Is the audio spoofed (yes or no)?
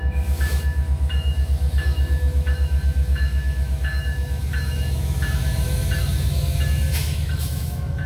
yes